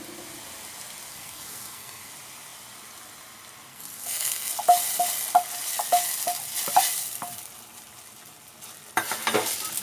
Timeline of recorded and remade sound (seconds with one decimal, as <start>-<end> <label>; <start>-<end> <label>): 0.0-1.1 recorded; 1.1-2.1 remade; 2.1-3.7 recorded; 3.7-4.5 remade; 4.5-9.8 recorded